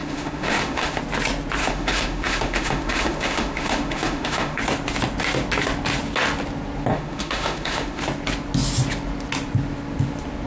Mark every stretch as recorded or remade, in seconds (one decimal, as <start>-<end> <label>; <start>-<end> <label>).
0.0-1.0 remade; 1.0-1.6 recorded; 1.6-4.6 remade; 4.6-6.9 recorded; 6.9-8.0 remade; 8.0-10.5 recorded